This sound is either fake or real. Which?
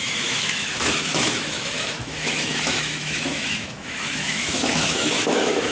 fake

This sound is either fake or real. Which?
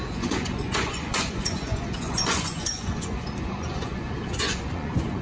fake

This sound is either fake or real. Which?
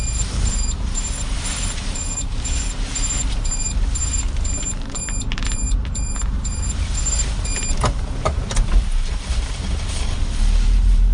fake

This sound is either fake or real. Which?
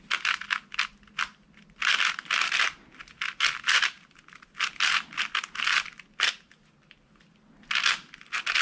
real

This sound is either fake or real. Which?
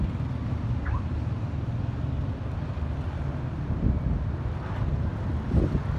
real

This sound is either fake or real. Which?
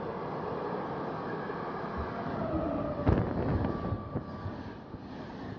real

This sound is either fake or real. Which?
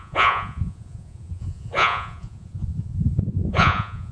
fake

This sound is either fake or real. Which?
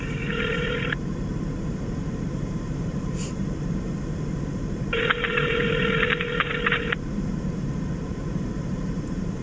fake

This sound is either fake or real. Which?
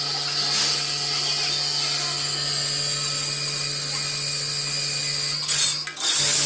real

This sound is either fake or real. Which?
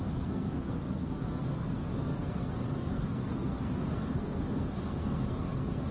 fake